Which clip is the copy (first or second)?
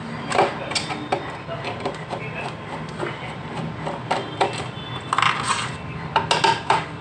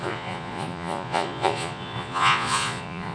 second